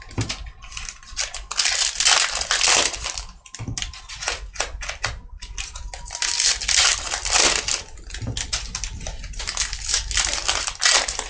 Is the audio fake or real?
real